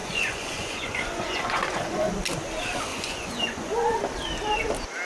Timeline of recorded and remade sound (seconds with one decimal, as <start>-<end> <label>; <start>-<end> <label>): 0.0-2.1 remade; 2.1-2.9 recorded; 2.9-4.0 remade; 4.0-5.0 recorded